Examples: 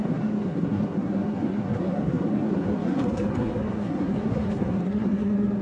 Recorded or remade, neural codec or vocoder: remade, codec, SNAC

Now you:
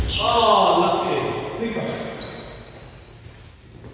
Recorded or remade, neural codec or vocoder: recorded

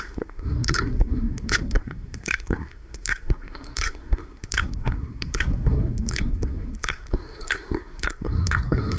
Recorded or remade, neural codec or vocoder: remade, codec, SNAC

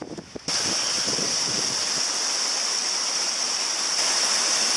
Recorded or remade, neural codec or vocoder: recorded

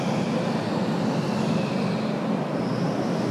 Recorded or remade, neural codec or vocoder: recorded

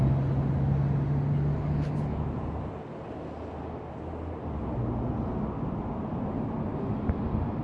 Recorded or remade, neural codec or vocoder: recorded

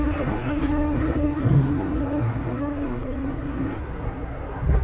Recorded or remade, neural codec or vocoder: remade, codec, SNAC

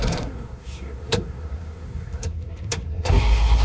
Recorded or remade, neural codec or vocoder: remade, codec, SNAC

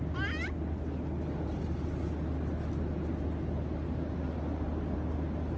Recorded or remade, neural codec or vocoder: recorded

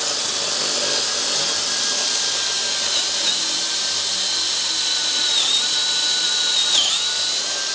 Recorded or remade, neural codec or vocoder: recorded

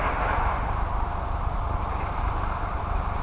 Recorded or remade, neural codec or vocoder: remade, vocoder, BigVGAN v2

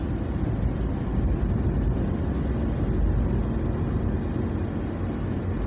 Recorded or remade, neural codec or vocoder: recorded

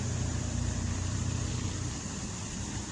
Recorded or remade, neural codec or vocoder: remade, vocoder, BigVGAN v2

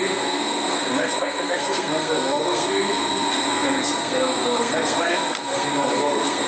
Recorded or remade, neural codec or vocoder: remade, codec, SNAC